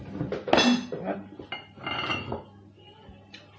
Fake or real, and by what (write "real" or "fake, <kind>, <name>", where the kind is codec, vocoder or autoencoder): real